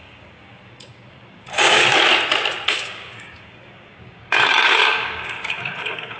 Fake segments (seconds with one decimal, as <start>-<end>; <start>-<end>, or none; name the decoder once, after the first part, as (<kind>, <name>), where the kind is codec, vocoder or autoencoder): 0.0-1.8 (codec, DAC); 2.7-6.2